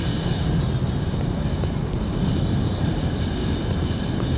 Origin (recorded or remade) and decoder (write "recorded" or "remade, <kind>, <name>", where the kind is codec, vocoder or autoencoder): remade, vocoder, BigVGAN v2